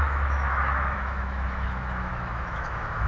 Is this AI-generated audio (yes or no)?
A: yes